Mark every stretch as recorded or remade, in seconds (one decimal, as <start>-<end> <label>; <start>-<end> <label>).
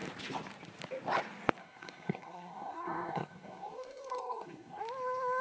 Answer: 0.0-1.6 recorded; 1.6-4.8 remade; 4.8-5.4 recorded